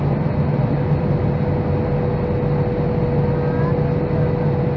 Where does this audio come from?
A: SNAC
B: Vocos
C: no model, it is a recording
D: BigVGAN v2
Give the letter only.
C